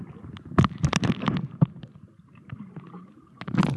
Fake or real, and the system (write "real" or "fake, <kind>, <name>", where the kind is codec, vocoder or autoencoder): real